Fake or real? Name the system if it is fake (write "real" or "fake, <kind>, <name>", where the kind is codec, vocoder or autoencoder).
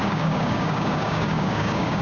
fake, codec, DAC